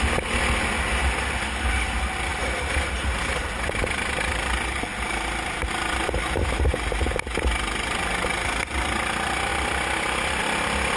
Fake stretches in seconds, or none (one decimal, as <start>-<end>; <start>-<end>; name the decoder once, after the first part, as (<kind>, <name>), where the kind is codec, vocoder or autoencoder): 9.5-10.4 (vocoder, BigVGAN v2)